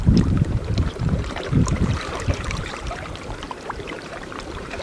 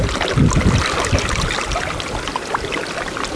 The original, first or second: second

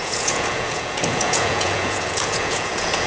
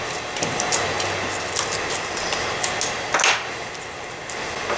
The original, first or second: second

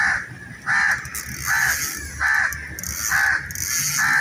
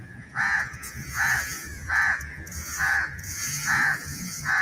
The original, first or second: first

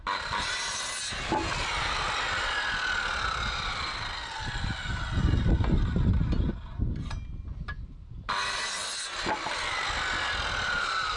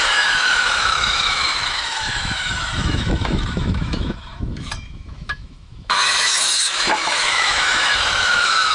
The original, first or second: first